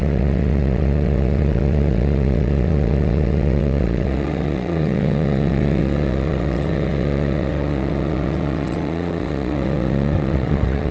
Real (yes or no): no